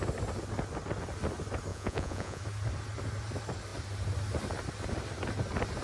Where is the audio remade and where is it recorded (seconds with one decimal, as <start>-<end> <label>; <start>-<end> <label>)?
0.0-1.7 recorded; 1.7-2.4 remade; 2.4-5.8 recorded